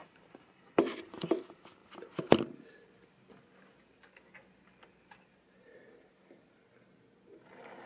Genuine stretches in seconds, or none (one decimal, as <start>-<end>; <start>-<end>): 0.0-7.9